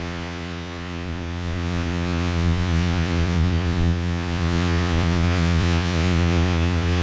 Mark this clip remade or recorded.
remade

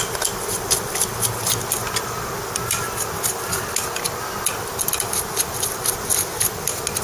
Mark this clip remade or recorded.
recorded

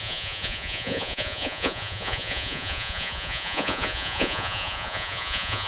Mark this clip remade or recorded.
remade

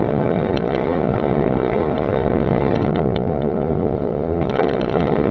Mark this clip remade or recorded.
remade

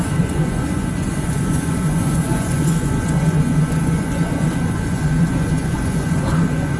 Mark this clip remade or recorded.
remade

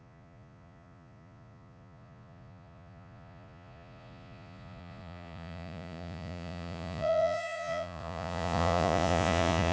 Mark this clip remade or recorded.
remade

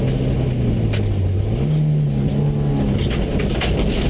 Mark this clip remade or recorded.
recorded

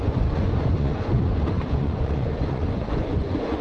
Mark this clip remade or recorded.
remade